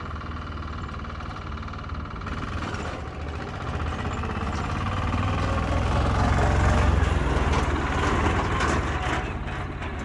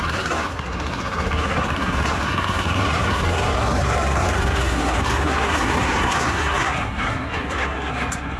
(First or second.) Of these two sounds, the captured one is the first